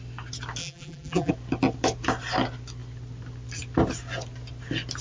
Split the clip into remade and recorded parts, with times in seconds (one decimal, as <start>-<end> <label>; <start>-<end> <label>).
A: 0.0-0.6 recorded; 0.6-1.3 remade; 1.3-5.0 recorded